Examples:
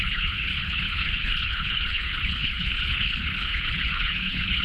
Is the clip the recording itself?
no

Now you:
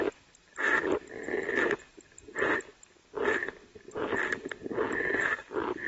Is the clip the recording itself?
no